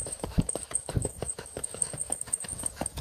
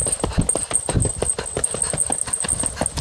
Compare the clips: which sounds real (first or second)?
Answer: second